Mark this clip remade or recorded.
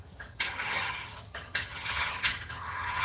remade